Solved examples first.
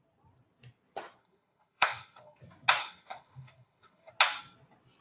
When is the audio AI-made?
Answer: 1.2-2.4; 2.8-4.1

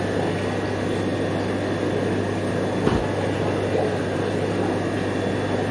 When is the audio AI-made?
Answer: none

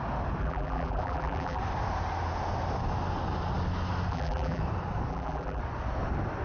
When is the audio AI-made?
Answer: 0.4-1.6; 4.1-4.6; 5.1-5.6